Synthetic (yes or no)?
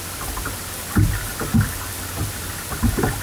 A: no